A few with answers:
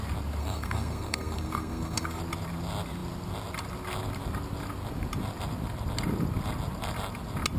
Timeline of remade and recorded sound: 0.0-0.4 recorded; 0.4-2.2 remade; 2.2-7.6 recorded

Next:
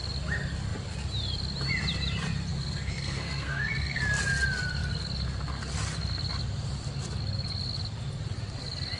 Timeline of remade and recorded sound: 0.0-2.5 recorded; 2.5-4.0 remade; 4.0-9.0 recorded

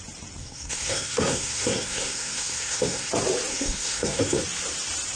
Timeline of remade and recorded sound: 0.0-0.4 recorded; 0.4-3.1 remade; 3.1-3.5 recorded; 3.5-4.4 remade; 4.4-5.2 recorded

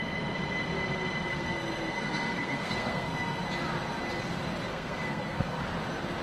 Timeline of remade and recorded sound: 0.0-1.3 recorded; 1.3-3.4 remade; 3.4-4.7 recorded; 4.7-5.6 remade; 5.6-6.2 recorded

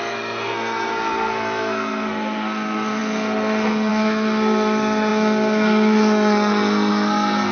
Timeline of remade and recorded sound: 0.0-7.5 remade

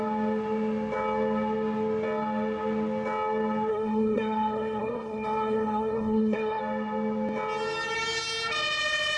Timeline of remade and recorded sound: 0.0-3.7 recorded; 3.7-6.6 remade; 6.6-9.2 recorded

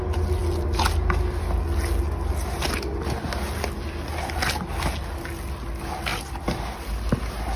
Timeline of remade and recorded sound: 0.0-7.6 recorded